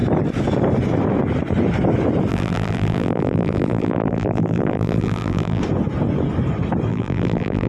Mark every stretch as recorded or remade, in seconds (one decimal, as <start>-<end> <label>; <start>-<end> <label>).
0.0-2.3 recorded; 2.3-5.6 remade; 5.6-6.9 recorded; 6.9-7.7 remade